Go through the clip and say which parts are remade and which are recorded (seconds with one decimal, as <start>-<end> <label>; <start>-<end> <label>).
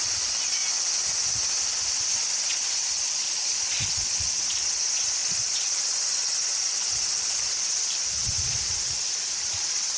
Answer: 0.0-0.6 remade; 0.6-1.9 recorded; 1.9-10.0 remade